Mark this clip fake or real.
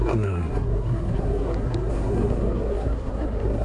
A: fake